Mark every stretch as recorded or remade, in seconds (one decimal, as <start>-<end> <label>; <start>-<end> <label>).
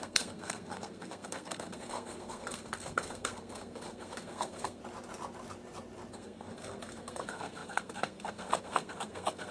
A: 0.0-4.8 remade; 4.8-6.1 recorded; 6.1-9.5 remade